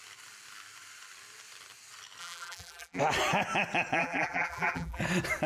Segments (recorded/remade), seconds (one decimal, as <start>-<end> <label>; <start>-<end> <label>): 0.0-2.2 recorded; 2.2-3.0 remade; 3.0-4.0 recorded; 4.0-5.0 remade; 5.0-5.5 recorded